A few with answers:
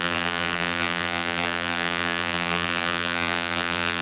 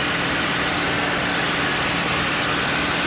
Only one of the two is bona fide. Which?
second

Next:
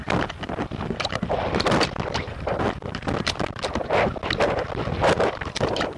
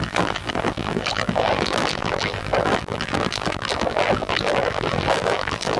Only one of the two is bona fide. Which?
first